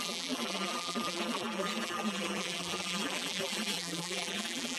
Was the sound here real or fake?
fake